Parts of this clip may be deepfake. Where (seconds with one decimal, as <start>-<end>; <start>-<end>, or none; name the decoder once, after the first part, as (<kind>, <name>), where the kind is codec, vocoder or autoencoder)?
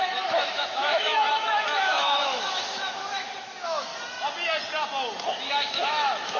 0.0-3.9 (autoencoder, DAC-VAE); 5.5-6.4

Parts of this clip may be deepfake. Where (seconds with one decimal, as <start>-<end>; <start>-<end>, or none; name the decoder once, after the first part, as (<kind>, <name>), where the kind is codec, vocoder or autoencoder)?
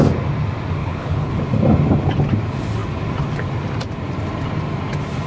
0.8-1.3 (codec, HILCodec)